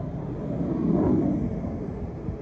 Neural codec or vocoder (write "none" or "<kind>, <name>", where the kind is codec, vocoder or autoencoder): none